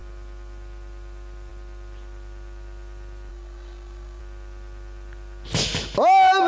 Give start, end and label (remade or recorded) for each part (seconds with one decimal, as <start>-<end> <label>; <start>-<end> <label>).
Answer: 0.0-3.3 recorded; 3.3-4.2 remade; 4.2-6.5 recorded